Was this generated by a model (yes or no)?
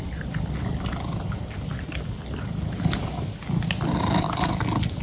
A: no